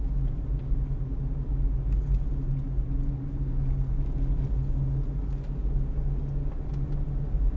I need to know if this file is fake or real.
real